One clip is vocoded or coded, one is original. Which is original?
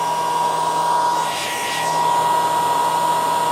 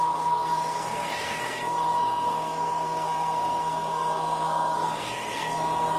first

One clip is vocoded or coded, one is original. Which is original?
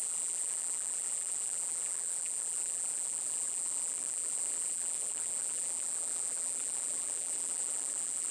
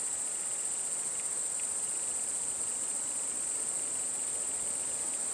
second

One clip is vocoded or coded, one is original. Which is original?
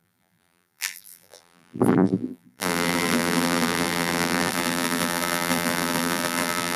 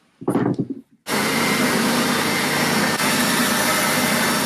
second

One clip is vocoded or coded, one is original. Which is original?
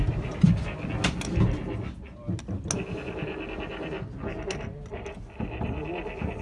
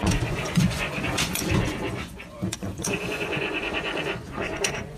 first